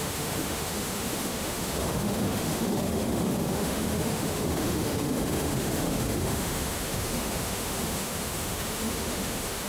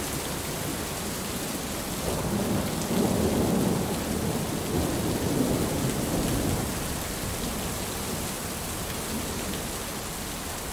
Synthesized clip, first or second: first